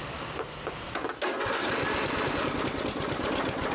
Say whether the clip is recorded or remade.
recorded